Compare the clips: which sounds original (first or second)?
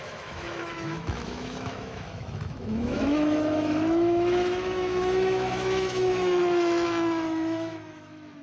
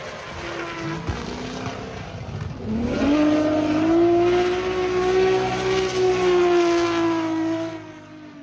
second